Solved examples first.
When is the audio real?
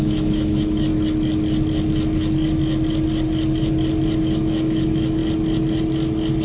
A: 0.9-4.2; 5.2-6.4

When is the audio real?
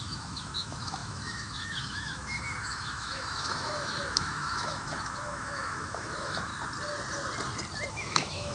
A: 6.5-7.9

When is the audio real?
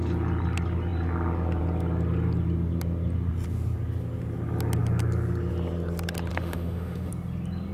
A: 0.0-6.3; 7.1-7.7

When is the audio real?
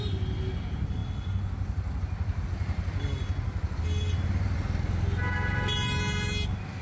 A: 0.0-6.8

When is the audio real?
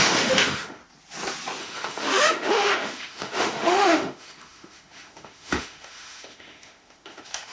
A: 0.8-1.6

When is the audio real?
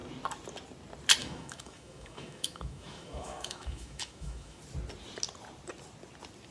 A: 0.0-1.2; 4.6-6.5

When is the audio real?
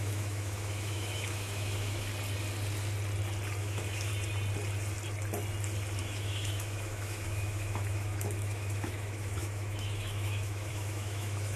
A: 2.1-3.6; 4.1-6.0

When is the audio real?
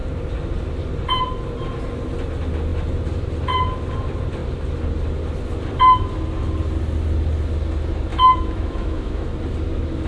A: 0.0-8.1; 9.4-10.1